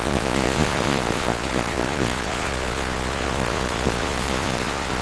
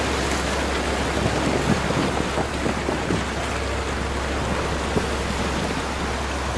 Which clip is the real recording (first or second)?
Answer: second